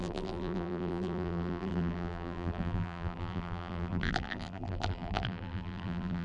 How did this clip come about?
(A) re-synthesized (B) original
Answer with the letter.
A